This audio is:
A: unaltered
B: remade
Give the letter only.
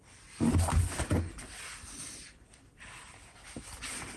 A